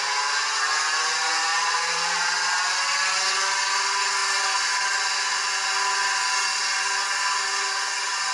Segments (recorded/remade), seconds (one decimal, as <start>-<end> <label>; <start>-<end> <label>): 0.0-1.5 recorded; 1.5-2.3 remade; 2.3-8.3 recorded